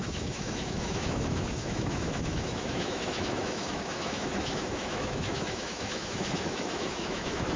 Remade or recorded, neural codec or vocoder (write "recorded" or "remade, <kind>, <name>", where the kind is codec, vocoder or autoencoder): remade, autoencoder, DAC-VAE